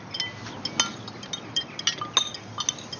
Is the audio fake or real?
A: real